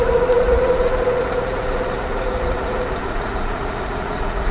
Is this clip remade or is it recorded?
remade